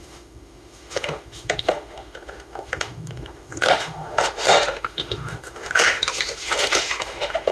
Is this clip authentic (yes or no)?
no